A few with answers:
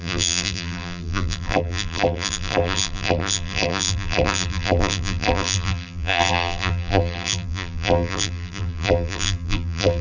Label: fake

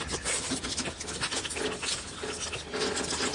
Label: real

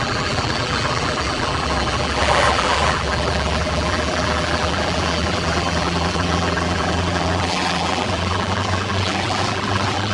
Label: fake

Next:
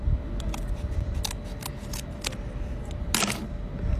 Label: real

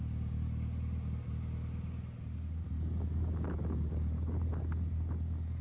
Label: real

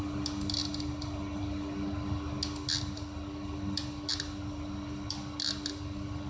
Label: real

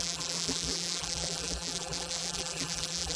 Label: fake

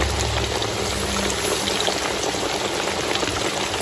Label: real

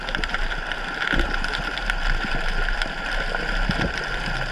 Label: real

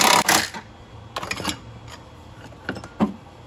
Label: real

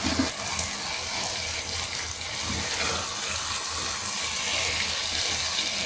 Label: real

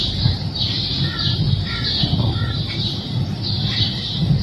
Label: fake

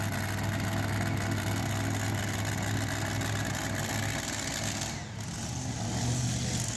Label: real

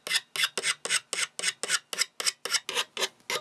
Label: real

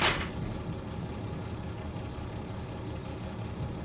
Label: real